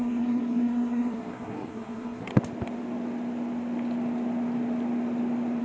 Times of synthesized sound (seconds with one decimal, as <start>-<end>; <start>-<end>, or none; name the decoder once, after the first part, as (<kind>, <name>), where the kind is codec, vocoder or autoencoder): 0.0-2.3 (codec, SNAC)